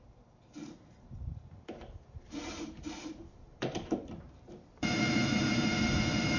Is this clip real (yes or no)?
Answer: no